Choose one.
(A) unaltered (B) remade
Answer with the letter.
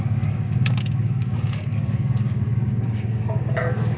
B